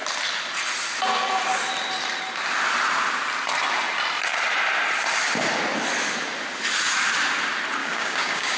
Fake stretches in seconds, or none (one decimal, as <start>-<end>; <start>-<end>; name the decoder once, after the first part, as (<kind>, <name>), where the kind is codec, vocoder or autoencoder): 7.8-8.6 (codec, DAC)